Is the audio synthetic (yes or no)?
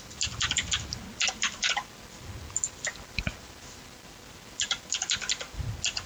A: no